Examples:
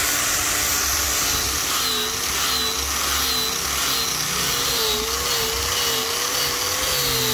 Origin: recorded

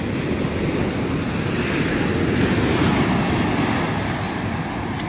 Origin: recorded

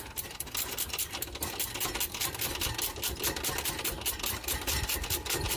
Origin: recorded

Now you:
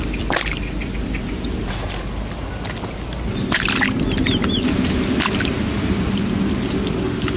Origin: recorded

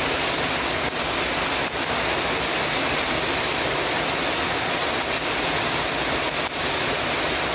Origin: recorded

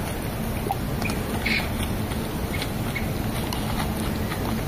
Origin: recorded